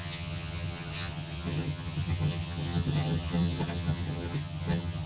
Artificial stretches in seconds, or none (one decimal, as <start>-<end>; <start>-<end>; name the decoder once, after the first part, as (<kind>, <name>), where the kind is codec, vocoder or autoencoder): 0.0-5.1 (vocoder, HiFi-GAN)